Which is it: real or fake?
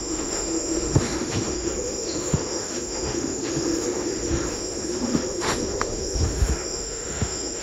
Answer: fake